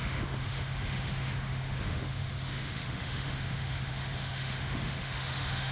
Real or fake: fake